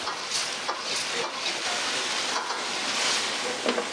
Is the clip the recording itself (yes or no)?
yes